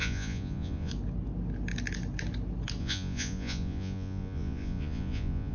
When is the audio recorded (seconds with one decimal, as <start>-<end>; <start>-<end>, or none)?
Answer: 0.9-2.8